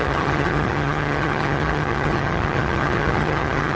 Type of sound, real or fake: fake